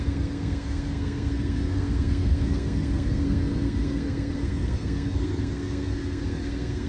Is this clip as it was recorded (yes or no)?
no